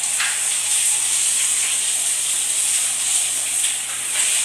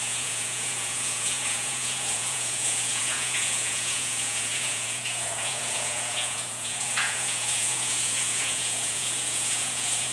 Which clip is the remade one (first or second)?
second